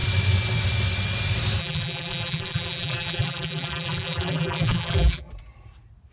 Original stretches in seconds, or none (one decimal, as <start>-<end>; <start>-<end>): 0.0-1.6; 5.3-6.1